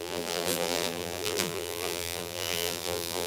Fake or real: fake